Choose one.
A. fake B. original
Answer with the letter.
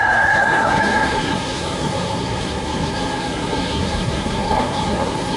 A